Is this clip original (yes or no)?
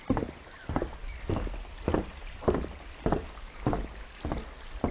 yes